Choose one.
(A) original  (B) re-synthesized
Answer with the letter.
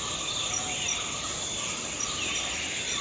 A